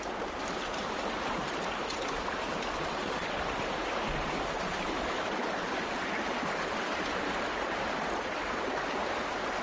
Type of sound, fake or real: real